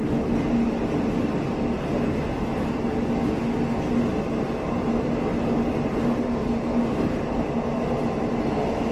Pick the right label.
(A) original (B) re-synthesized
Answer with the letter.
A